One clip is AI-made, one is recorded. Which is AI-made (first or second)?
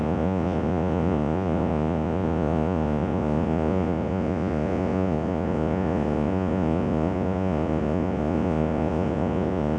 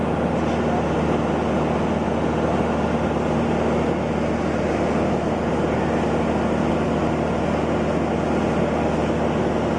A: first